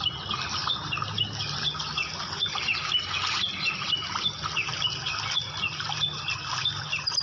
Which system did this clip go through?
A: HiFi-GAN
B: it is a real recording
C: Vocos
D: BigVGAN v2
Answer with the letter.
B